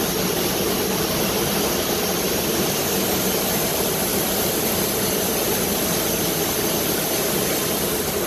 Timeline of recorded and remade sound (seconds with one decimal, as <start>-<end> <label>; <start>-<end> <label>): 0.0-8.3 recorded